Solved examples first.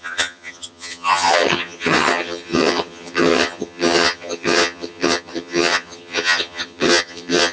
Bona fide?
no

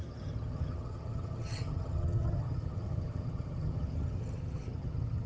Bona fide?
no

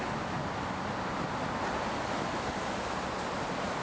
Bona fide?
yes